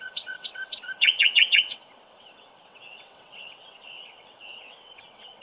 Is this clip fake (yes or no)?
yes